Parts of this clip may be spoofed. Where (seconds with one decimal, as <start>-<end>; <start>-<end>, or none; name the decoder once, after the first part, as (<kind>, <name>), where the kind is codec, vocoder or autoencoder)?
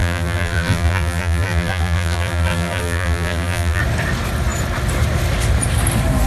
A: 0.0-3.8 (vocoder, BigVGAN v2)